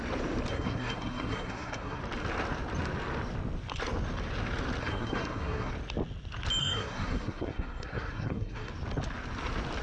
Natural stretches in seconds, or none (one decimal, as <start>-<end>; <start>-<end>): 0.0-0.5; 2.0-4.8; 5.7-6.6; 8.7-9.8